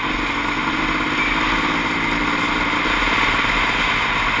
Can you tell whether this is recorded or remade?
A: recorded